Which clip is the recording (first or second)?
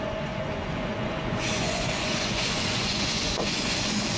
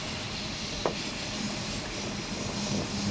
second